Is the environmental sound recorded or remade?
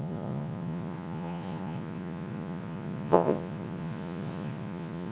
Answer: remade